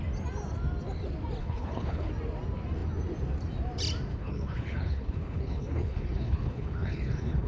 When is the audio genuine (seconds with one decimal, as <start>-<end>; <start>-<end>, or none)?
0.0-1.4; 2.1-4.1